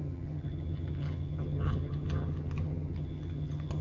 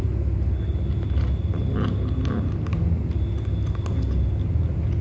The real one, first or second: second